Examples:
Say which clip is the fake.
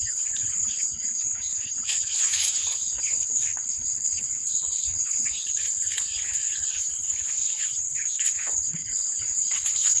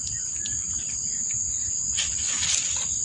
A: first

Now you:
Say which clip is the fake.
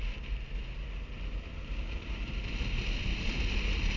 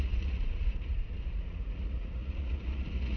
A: second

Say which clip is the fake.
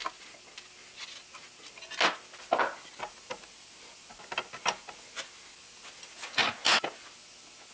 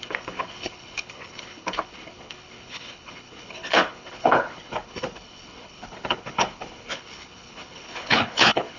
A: second